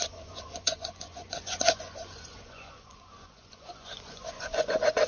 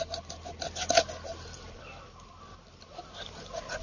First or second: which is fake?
first